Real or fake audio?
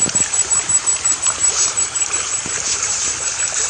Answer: fake